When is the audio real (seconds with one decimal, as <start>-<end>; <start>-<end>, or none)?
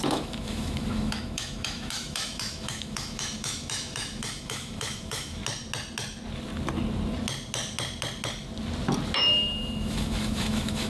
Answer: 5.4-9.2